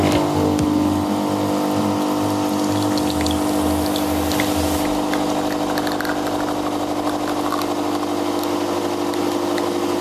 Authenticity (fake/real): real